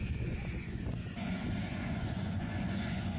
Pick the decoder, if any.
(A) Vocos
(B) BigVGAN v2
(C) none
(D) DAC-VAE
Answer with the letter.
A